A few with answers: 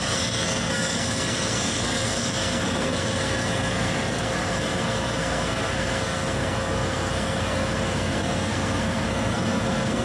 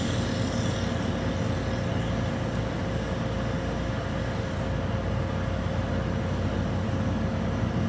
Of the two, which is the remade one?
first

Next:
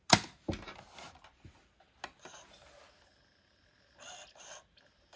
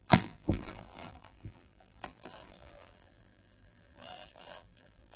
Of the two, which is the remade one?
second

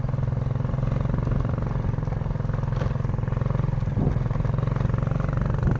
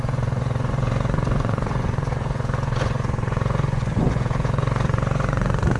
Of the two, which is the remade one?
second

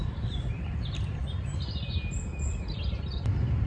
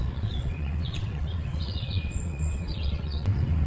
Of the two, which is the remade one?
second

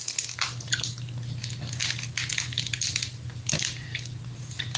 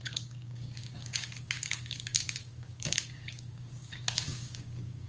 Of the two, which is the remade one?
second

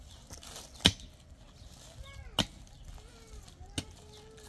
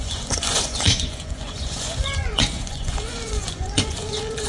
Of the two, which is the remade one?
second